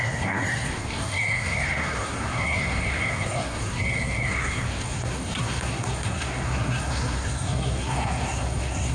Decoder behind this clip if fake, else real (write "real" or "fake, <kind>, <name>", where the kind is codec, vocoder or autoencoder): fake, codec, SNAC